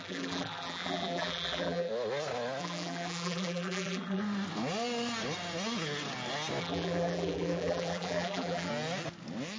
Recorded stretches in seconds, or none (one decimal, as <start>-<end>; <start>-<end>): 1.9-2.6; 4.2-6.6; 8.7-9.6